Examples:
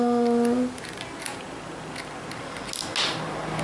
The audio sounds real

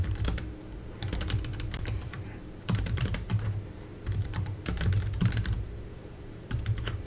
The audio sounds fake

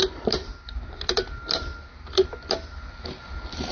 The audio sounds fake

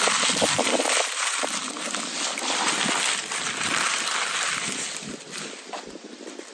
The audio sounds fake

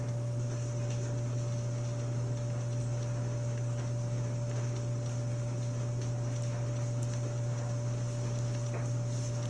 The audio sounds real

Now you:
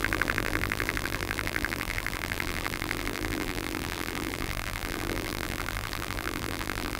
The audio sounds fake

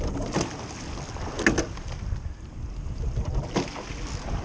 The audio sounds real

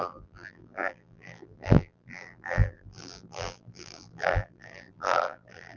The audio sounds fake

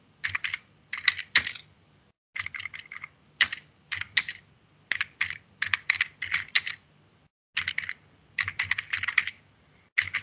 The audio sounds real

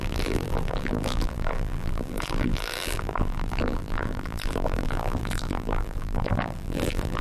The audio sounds fake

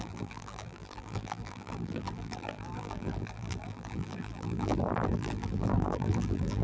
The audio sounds fake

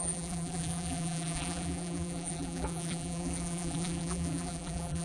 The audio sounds fake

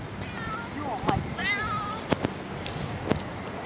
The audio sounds real